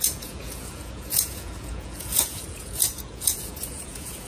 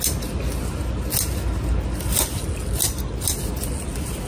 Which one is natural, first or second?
second